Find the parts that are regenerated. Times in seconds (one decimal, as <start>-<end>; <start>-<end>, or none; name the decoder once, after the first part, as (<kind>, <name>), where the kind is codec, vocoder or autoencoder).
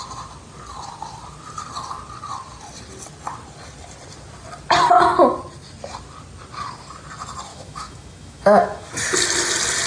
7.5-8.9 (autoencoder, DAC-VAE)